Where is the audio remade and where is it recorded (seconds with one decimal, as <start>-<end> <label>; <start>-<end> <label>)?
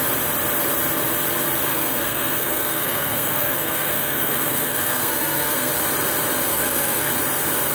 0.0-1.7 recorded; 1.7-5.7 remade; 5.7-6.5 recorded; 6.5-7.1 remade; 7.1-7.7 recorded